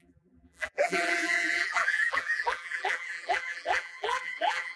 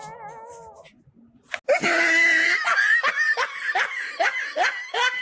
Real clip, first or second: second